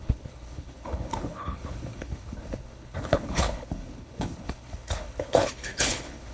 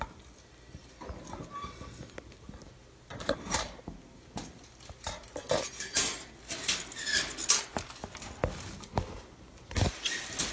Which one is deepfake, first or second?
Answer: first